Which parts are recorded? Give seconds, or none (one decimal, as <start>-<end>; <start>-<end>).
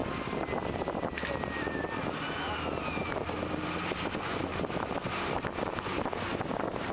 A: 0.0-4.1; 4.5-6.9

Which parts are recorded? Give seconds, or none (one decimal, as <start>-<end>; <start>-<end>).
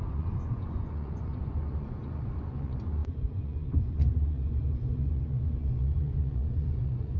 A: none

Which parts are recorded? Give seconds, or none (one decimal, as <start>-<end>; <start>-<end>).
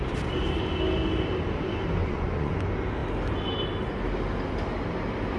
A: 0.0-2.0; 2.5-5.4